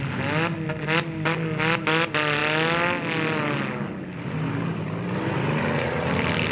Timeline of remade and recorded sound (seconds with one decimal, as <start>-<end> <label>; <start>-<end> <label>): 0.0-6.5 recorded